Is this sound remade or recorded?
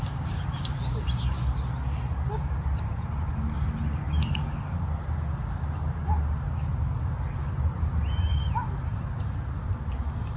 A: recorded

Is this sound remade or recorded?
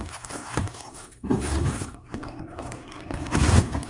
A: remade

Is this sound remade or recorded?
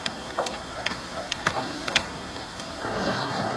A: remade